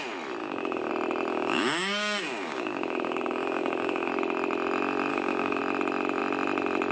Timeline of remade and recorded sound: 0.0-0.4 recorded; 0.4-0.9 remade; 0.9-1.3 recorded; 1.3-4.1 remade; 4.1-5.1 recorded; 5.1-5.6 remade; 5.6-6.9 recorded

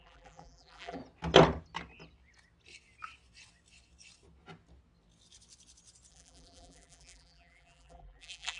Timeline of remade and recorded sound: 0.0-1.0 remade; 1.0-6.1 recorded; 6.1-8.6 remade

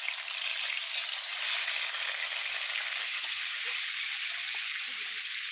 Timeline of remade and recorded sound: 0.0-0.5 remade; 0.5-3.6 recorded; 3.6-5.5 remade